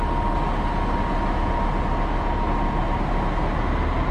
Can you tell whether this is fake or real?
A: real